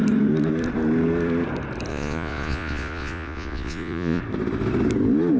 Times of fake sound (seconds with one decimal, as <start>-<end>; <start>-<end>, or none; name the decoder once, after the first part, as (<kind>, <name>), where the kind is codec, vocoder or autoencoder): 1.9-4.2 (vocoder, Vocos)